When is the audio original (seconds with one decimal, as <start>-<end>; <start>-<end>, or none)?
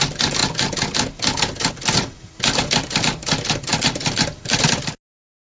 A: 0.0-5.4